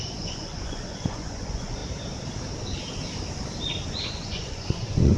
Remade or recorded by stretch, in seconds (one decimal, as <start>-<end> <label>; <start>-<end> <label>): 0.0-1.8 remade; 1.8-4.0 recorded; 4.0-5.2 remade